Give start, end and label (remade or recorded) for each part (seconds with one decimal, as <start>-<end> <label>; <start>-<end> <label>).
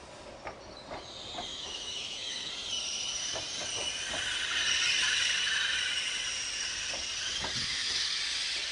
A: 0.0-1.5 recorded; 1.5-2.5 remade; 2.5-7.6 recorded; 7.6-8.2 remade; 8.2-8.7 recorded